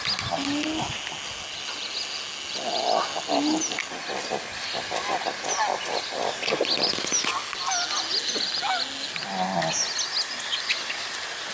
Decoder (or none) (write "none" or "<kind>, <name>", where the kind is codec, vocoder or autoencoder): none